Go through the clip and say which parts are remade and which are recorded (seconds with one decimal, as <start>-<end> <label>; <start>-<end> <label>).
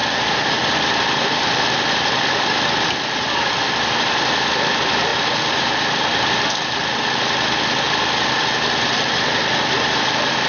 0.0-10.5 recorded